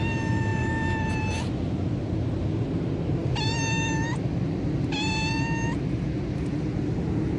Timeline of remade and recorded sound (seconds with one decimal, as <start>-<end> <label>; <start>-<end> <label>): 0.0-7.4 recorded